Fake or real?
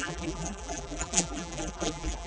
fake